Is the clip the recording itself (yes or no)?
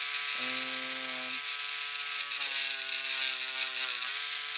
yes